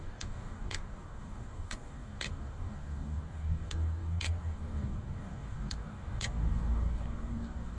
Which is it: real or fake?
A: fake